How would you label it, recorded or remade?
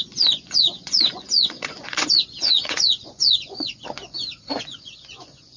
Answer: remade